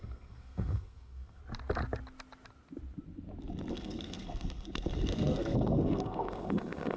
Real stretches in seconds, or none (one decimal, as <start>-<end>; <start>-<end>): 1.4-3.7